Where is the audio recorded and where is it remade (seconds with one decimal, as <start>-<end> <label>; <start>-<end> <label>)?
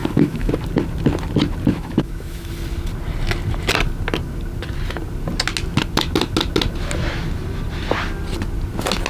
0.0-0.5 remade; 0.5-1.7 recorded; 1.7-2.5 remade; 2.5-9.1 recorded